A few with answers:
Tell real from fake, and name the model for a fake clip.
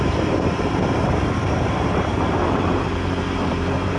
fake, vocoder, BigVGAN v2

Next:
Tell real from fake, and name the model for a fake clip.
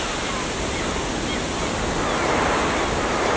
real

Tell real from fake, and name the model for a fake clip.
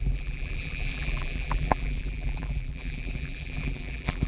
fake, vocoder, BigVGAN v2